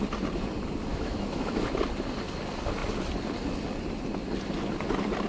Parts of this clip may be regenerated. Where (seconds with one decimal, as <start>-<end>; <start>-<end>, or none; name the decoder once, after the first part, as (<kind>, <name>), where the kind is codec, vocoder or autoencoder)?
0.9-1.7 (autoencoder, DAC-VAE)